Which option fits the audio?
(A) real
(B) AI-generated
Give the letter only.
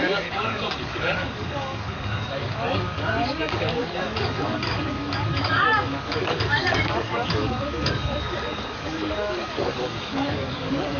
B